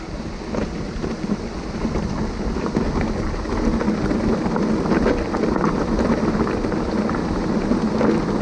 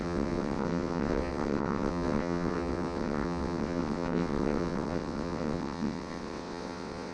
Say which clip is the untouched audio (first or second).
first